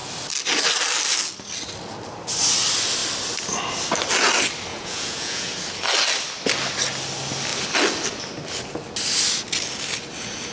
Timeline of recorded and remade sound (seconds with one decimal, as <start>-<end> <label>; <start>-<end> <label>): 0.0-4.7 recorded; 4.7-5.5 remade; 5.5-10.5 recorded